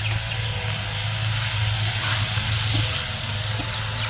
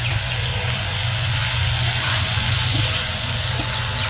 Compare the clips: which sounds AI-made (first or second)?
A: second